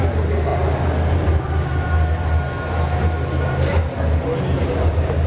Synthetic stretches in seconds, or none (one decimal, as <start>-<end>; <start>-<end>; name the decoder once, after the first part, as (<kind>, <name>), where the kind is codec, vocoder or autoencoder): none